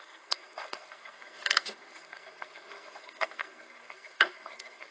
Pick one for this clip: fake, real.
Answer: fake